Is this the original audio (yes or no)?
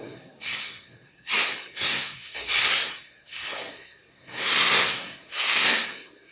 no